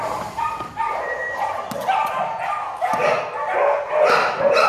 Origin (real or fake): real